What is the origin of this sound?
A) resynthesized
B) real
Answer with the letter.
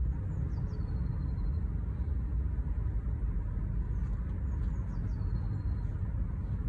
B